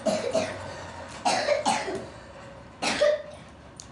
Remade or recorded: recorded